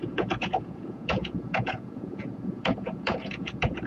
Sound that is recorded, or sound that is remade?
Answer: remade